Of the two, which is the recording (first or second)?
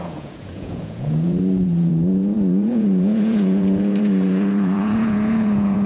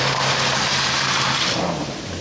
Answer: second